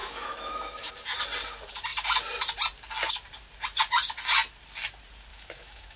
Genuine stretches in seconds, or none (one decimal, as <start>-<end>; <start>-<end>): 0.9-5.3